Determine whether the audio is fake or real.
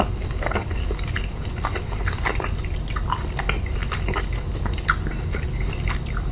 real